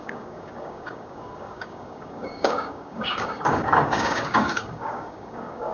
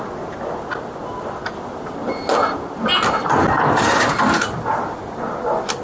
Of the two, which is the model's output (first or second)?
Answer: first